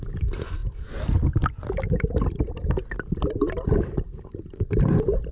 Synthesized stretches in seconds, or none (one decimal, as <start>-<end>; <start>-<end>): none